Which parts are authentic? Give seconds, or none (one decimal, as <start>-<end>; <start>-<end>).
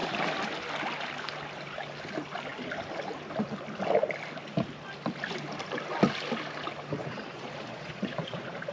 0.0-7.0